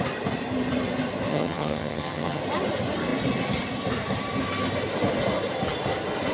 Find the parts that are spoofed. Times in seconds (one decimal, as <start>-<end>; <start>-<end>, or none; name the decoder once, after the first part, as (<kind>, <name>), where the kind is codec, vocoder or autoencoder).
1.3-2.4 (vocoder, HiFi-GAN)